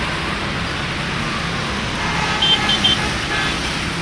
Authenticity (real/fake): real